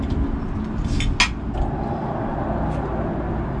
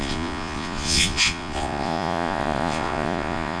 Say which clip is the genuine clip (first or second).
first